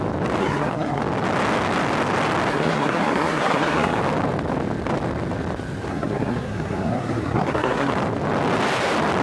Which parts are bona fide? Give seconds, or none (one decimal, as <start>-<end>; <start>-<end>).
0.0-0.4; 1.0-2.5; 4.0-5.9; 7.9-9.2